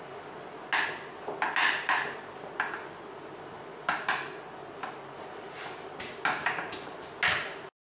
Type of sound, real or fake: real